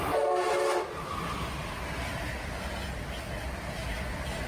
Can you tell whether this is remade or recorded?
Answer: recorded